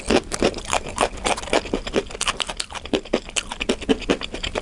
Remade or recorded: recorded